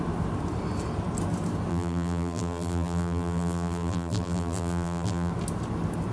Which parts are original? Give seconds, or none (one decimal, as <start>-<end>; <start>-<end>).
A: 0.0-1.7; 5.3-6.1